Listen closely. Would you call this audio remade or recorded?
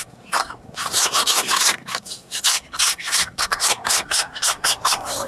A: remade